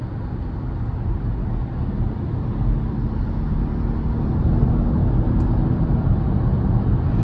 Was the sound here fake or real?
real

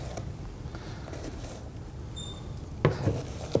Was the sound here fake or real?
real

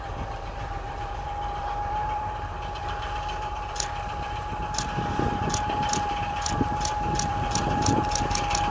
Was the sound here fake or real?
fake